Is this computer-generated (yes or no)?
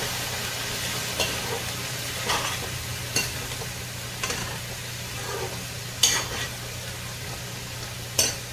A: no